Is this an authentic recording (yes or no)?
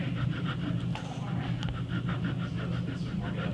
yes